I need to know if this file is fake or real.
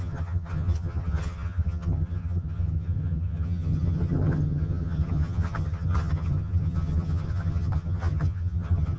fake